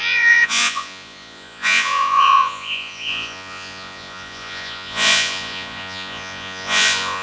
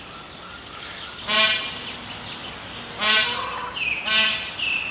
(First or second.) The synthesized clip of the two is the first